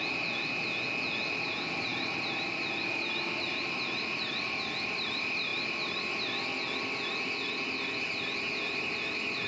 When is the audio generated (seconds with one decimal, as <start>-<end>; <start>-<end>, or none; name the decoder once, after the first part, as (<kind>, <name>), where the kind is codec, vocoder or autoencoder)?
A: none